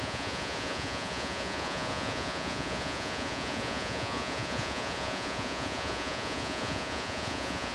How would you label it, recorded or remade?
remade